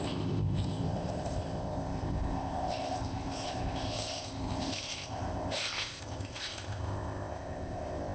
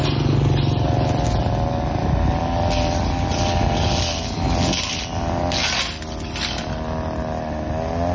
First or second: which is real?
second